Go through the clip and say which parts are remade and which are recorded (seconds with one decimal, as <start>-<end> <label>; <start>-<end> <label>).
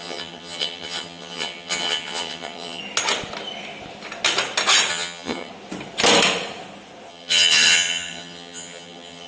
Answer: 0.0-2.8 remade; 2.8-4.9 recorded; 4.9-5.5 remade; 5.5-7.1 recorded; 7.1-9.3 remade